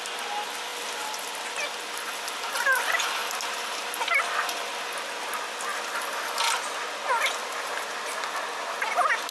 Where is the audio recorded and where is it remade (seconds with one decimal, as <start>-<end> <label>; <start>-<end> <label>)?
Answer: 0.0-9.3 recorded